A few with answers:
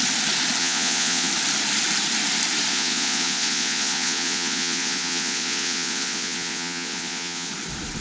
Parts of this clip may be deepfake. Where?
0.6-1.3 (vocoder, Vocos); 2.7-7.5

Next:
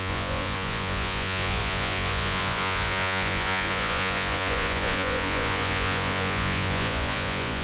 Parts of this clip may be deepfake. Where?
0.0-7.6 (vocoder, Vocos)

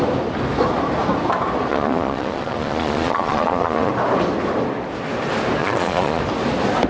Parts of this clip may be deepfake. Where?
1.7-3.9 (vocoder, Vocos); 5.6-6.2